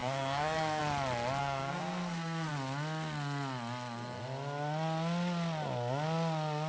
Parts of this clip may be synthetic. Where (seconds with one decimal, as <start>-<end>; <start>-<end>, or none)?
0.0-0.8; 1.4-2.5